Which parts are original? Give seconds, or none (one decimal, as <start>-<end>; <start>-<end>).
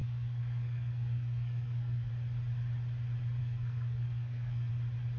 2.1-3.4; 4.7-5.2